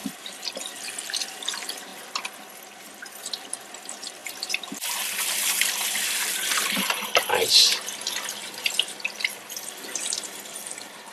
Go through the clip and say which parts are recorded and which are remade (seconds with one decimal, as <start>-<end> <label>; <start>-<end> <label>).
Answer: 0.0-1.3 recorded; 1.3-1.9 remade; 1.9-2.9 recorded; 2.9-11.1 remade